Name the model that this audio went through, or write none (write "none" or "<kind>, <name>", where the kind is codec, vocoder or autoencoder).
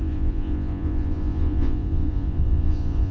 vocoder, Vocos